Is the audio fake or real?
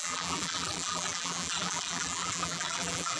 fake